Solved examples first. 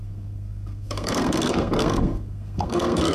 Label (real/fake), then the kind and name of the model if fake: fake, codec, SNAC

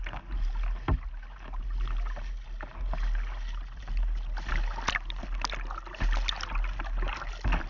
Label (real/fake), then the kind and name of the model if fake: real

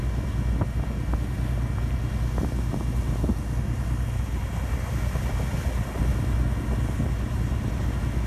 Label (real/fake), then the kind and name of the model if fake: real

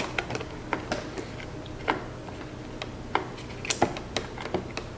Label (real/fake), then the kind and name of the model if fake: real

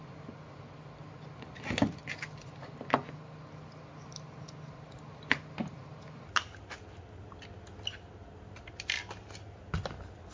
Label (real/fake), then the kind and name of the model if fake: real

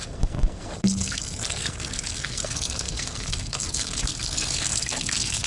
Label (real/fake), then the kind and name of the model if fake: fake, codec, SNAC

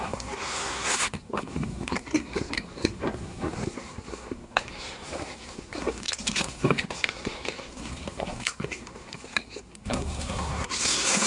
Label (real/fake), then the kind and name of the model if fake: fake, codec, SNAC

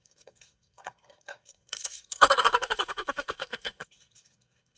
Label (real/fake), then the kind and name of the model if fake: fake, codec, SNAC